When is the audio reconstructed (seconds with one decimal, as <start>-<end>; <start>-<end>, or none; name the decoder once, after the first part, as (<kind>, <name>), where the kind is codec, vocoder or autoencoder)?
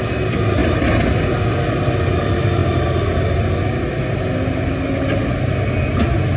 none